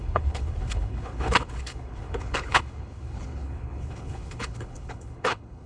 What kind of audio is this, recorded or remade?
remade